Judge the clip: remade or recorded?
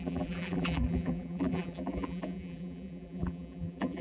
remade